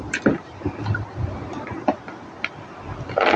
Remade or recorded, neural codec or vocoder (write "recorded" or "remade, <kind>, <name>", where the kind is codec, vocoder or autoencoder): recorded